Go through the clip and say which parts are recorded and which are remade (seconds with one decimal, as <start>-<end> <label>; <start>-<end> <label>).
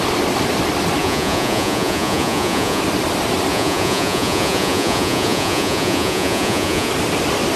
0.0-1.0 recorded; 1.0-2.8 remade; 2.8-3.5 recorded; 3.5-6.9 remade; 6.9-7.6 recorded